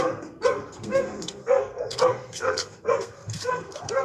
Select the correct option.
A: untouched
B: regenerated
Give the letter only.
B